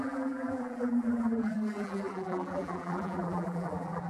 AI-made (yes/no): yes